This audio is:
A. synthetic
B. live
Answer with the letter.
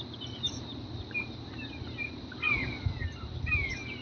B